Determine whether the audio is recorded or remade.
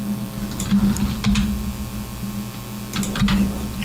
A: recorded